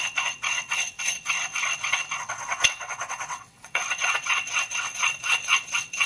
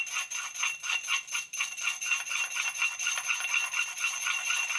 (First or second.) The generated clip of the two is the first